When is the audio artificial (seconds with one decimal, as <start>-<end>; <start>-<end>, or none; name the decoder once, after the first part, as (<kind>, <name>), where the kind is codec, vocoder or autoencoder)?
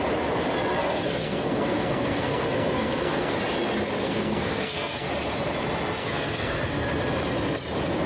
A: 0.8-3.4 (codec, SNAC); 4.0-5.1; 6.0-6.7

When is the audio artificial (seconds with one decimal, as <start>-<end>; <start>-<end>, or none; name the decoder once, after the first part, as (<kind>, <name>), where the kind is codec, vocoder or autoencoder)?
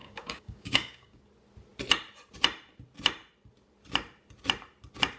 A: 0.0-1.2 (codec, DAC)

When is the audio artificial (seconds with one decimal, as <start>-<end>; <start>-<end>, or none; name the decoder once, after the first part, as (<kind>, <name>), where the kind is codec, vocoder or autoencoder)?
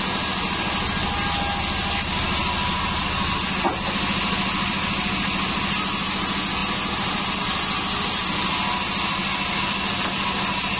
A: none